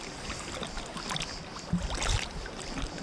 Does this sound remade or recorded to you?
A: recorded